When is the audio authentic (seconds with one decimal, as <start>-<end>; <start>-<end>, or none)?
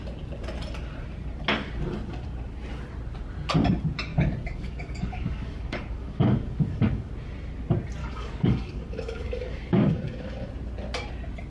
0.0-4.1; 7.1-8.0; 10.5-11.5